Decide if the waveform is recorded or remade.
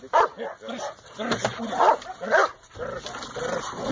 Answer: recorded